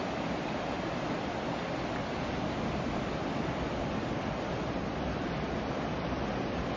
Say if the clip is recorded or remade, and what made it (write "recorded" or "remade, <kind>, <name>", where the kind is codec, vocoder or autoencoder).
recorded